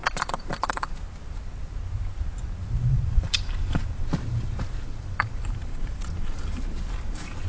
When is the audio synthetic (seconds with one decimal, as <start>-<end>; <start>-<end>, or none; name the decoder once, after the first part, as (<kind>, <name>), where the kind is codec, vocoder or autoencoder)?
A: 0.0-1.0 (vocoder, BigVGAN v2); 2.6-6.2